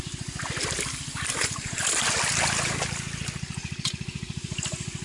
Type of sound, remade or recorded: remade